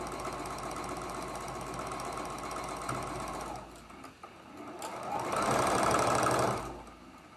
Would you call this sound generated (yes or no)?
no